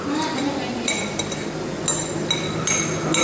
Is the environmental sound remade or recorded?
recorded